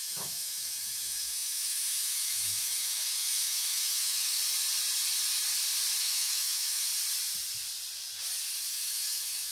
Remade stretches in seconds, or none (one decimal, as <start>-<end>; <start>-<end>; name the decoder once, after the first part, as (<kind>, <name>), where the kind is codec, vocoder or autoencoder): 0.0-4.4 (autoencoder, DAC-VAE); 6.0-6.9; 8.7-9.5

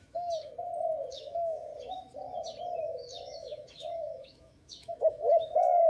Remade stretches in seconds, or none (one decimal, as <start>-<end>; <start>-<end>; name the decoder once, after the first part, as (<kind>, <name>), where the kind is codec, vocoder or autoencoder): 0.0-0.5 (autoencoder, DAC-VAE); 1.1-1.7; 2.8-5.9

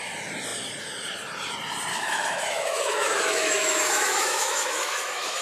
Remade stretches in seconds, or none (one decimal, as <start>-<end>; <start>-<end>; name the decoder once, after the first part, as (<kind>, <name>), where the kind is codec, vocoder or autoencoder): 1.9-5.4 (autoencoder, DAC-VAE)

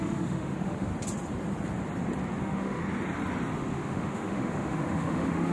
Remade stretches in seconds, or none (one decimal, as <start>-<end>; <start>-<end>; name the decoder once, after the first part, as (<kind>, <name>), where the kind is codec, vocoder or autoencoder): 0.0-0.9 (autoencoder, DAC-VAE); 2.4-2.8; 3.6-5.5

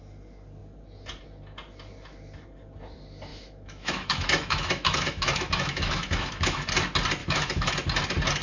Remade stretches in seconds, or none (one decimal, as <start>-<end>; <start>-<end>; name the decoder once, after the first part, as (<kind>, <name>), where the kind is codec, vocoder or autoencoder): 3.3-6.7 (autoencoder, DAC-VAE); 7.2-7.7